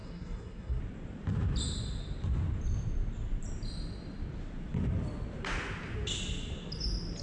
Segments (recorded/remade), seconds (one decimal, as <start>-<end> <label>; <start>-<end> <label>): 0.0-0.8 remade; 0.8-7.2 recorded